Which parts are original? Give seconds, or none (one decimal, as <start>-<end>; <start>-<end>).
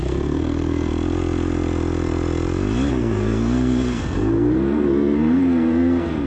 0.9-2.9